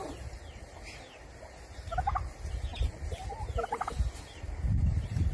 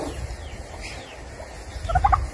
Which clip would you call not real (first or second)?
first